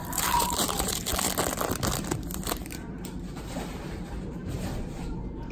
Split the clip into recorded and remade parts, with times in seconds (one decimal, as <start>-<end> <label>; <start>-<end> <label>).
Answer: 0.0-1.1 remade; 1.1-2.5 recorded; 2.5-5.5 remade